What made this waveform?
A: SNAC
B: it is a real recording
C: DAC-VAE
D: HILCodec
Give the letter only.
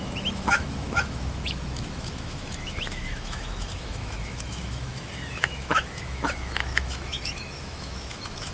C